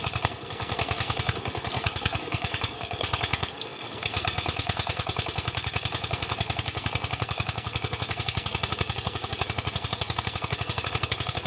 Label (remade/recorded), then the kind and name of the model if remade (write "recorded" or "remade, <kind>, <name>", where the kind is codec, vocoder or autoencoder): remade, codec, SNAC